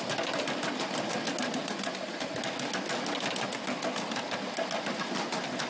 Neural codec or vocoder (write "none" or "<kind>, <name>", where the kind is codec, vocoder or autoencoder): none